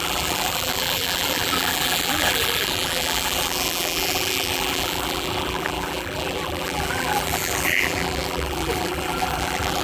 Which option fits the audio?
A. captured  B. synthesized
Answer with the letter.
B